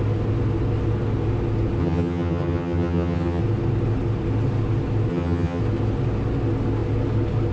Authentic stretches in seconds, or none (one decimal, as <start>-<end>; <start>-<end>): 0.0-1.8; 3.4-5.1; 5.6-7.5